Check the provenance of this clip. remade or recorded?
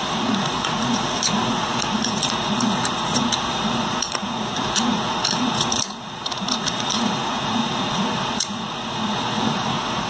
remade